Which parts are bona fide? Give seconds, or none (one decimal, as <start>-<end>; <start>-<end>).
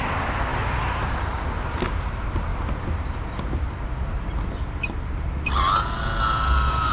0.0-6.9